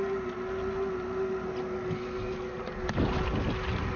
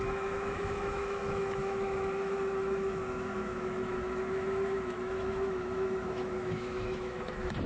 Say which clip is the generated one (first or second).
second